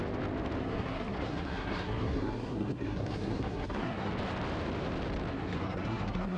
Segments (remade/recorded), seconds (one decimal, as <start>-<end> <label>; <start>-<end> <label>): 0.0-0.6 recorded; 0.6-4.1 remade; 4.1-5.3 recorded; 5.3-6.4 remade